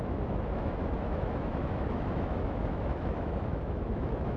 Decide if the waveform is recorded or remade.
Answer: remade